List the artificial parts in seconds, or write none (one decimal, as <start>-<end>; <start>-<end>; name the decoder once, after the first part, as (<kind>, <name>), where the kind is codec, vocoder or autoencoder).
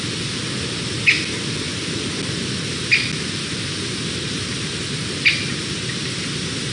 none